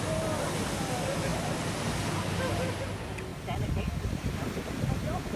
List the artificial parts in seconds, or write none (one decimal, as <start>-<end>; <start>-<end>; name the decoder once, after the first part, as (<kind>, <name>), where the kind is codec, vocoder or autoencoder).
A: none